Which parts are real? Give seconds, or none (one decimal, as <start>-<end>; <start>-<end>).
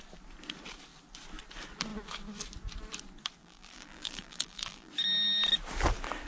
0.0-3.4; 4.9-6.3